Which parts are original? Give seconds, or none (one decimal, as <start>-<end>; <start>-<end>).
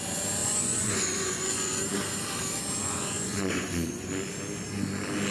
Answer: 0.0-0.4; 1.8-2.8; 4.1-5.3